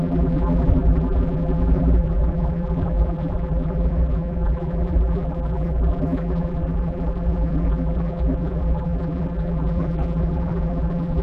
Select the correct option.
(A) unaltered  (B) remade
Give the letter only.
B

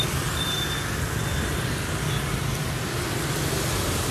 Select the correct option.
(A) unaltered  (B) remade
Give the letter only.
A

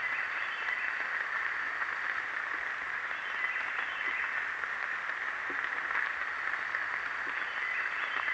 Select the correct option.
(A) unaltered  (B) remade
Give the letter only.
A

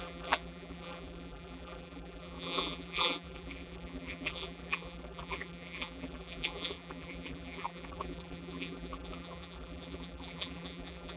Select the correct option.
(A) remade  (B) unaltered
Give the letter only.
A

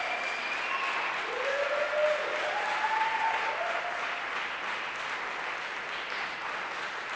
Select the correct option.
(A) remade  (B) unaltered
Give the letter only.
B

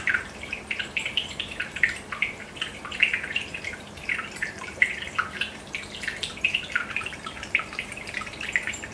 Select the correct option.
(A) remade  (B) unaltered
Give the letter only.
A